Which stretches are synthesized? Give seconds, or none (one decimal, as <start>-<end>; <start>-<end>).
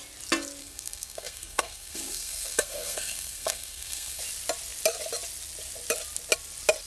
0.6-4.2